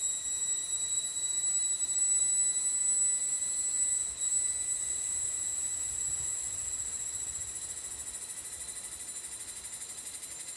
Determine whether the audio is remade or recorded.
recorded